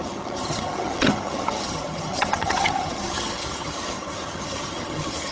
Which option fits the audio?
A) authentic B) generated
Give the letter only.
B